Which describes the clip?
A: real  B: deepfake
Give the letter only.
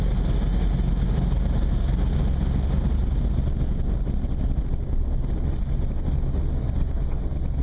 A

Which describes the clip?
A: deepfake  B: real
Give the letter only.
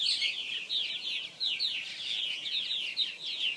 B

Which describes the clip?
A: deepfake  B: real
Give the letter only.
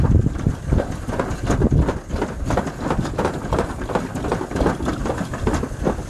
B